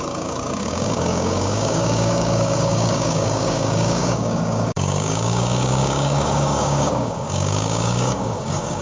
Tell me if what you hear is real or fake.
fake